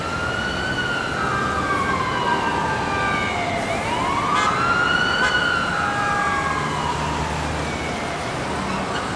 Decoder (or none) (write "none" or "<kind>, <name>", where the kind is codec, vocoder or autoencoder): none